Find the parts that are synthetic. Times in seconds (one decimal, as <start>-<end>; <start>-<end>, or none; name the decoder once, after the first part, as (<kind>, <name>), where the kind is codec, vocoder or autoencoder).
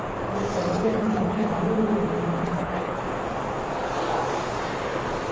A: 0.7-1.5 (codec, HILCodec); 2.4-3.0